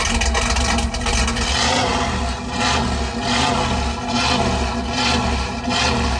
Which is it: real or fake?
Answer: real